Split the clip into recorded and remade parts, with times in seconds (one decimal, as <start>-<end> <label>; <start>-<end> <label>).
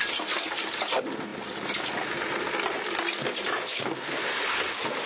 0.0-5.1 recorded